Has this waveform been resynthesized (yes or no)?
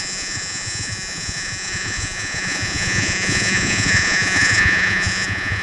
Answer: yes